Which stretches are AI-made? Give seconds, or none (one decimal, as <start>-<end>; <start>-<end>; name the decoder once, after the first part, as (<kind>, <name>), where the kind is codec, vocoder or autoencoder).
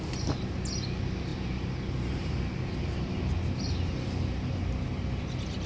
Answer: none